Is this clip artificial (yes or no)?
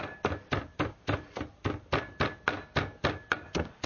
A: no